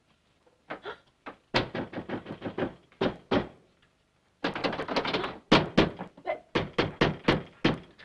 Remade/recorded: recorded